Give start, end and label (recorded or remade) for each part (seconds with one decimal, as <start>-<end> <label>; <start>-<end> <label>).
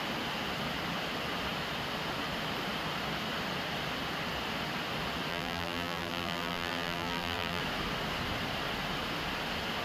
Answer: 0.0-5.3 recorded; 5.3-7.6 remade; 7.6-9.8 recorded